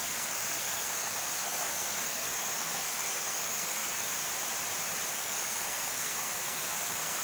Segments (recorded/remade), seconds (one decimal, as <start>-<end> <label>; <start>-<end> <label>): 0.0-4.2 remade; 4.2-5.1 recorded; 5.1-7.2 remade